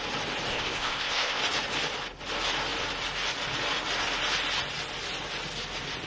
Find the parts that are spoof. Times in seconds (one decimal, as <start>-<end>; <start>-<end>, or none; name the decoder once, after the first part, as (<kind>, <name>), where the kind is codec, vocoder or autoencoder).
0.5-1.4 (codec, ZipCodec)